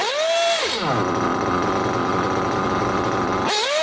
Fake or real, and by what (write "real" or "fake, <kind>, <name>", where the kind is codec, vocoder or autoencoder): real